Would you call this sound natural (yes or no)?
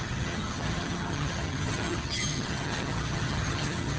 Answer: no